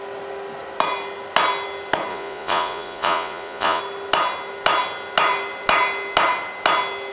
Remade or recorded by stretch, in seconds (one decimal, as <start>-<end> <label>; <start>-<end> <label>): 0.0-2.1 recorded; 2.1-3.8 remade; 3.8-7.1 recorded